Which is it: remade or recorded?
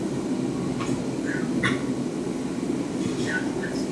recorded